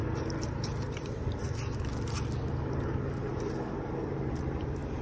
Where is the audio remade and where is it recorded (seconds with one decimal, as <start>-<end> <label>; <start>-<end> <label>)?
0.0-1.9 remade; 1.9-2.5 recorded; 2.5-5.0 remade